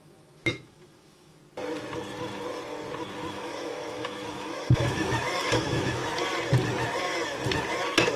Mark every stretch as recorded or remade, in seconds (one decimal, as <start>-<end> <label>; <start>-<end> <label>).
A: 0.0-1.4 remade; 1.4-3.3 recorded; 3.3-6.0 remade; 6.0-8.2 recorded

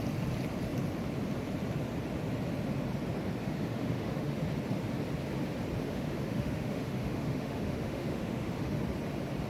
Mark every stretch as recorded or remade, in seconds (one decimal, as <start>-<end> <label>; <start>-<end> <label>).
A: 0.0-3.4 recorded; 3.4-4.4 remade; 4.4-5.8 recorded; 5.8-8.8 remade; 8.8-9.5 recorded

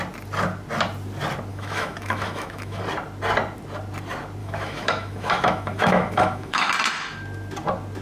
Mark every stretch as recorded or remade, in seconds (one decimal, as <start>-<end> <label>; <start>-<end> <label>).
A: 0.0-1.5 recorded; 1.5-2.8 remade; 2.8-4.4 recorded; 4.4-6.7 remade; 6.7-8.0 recorded